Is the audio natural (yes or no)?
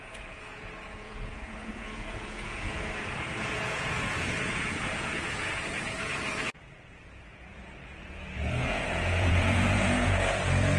no